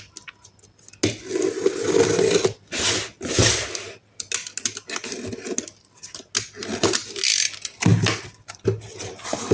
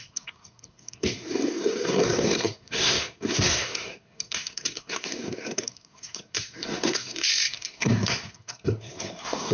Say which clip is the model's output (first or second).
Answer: second